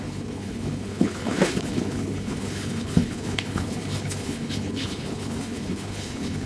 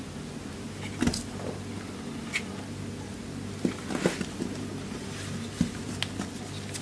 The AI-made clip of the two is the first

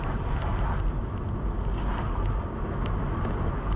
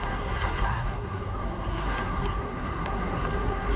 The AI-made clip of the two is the second